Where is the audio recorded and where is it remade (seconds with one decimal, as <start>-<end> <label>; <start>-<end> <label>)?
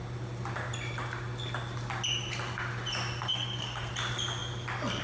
0.0-3.3 recorded; 3.3-3.9 remade; 3.9-5.0 recorded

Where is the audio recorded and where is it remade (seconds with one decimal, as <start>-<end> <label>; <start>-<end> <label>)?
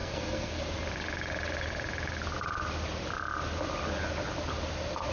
0.0-0.6 remade; 0.6-5.1 recorded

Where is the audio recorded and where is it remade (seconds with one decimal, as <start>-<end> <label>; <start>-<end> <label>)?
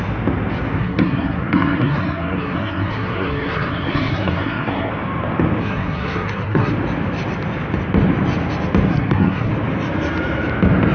0.0-0.8 recorded; 0.8-4.9 remade; 4.9-5.6 recorded; 5.6-6.7 remade; 6.7-8.9 recorded; 8.9-9.5 remade; 9.5-10.9 recorded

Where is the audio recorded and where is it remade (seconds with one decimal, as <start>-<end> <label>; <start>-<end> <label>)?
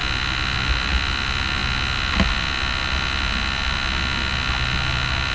0.0-5.3 recorded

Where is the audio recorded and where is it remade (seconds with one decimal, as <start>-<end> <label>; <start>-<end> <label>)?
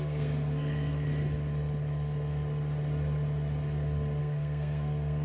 0.0-1.1 remade; 1.1-4.2 recorded; 4.2-5.2 remade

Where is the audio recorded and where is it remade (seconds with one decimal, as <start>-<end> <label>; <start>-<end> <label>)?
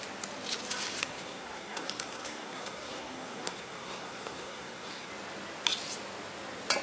0.0-1.0 recorded; 1.0-5.1 remade; 5.1-6.8 recorded